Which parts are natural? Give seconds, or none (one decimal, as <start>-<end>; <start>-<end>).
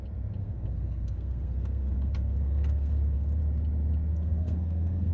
0.0-0.4; 3.4-4.1